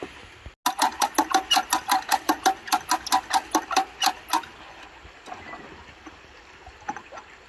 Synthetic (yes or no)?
no